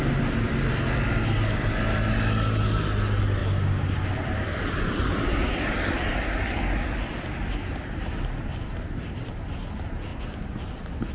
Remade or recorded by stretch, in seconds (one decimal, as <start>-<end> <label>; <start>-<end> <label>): 0.0-3.4 recorded; 3.4-8.1 remade; 8.1-8.5 recorded; 8.5-9.3 remade; 9.3-11.1 recorded